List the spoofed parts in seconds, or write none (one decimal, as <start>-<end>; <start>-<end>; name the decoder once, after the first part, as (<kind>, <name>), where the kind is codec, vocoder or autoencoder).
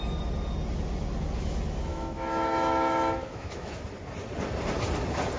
1.9-3.7 (autoencoder, DAC-VAE)